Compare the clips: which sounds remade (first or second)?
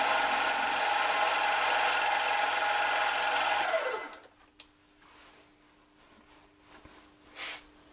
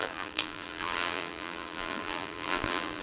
second